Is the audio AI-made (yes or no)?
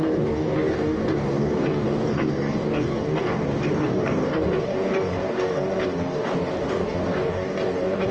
yes